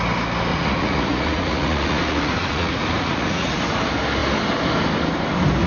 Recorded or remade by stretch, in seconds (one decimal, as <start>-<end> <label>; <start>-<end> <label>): 0.0-0.5 recorded; 0.5-3.6 remade; 3.6-5.7 recorded